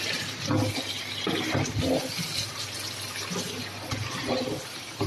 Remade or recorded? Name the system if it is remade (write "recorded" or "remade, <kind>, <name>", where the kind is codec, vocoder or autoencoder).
recorded